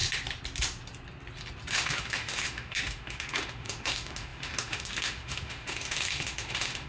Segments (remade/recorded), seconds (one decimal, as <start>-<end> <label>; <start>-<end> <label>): 0.0-1.7 recorded; 1.7-6.9 remade